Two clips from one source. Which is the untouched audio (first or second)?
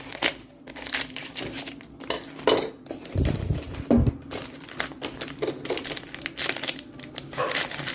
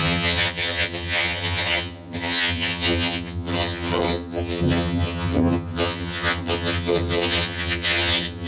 first